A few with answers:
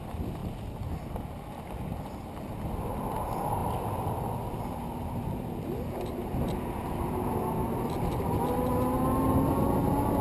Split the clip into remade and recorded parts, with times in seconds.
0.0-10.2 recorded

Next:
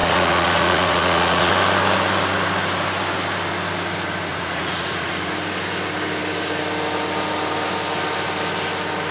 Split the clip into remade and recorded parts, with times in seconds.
0.0-1.5 remade; 1.5-4.3 recorded; 4.3-5.3 remade; 5.3-9.1 recorded

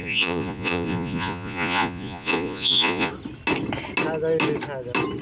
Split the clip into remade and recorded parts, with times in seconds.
0.0-3.1 remade; 3.1-5.2 recorded

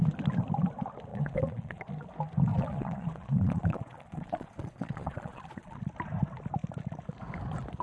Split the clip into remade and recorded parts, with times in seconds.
0.0-1.1 recorded; 1.1-1.9 remade; 1.9-2.5 recorded; 2.5-5.8 remade; 5.8-7.8 recorded

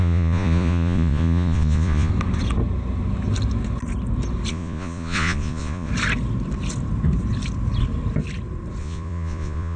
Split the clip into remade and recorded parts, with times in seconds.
0.0-2.1 remade; 2.1-4.5 recorded; 4.5-5.9 remade; 5.9-8.8 recorded; 8.8-9.8 remade

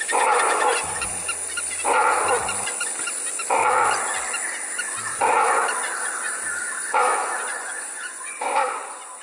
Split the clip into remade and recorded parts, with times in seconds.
0.0-1.1 remade; 1.1-5.1 recorded; 5.1-5.6 remade; 5.6-6.8 recorded; 6.8-9.2 remade

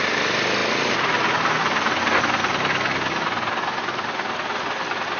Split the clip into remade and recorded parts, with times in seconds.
0.0-5.2 recorded